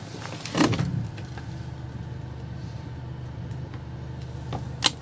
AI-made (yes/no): no